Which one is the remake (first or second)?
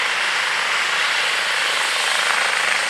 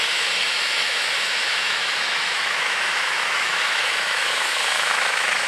second